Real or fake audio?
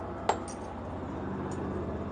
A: real